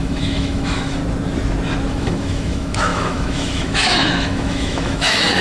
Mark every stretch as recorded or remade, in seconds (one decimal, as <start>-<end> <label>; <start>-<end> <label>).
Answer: 0.0-1.0 remade; 1.0-1.9 recorded; 1.9-5.4 remade